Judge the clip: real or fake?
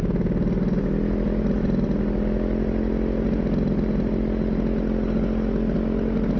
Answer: real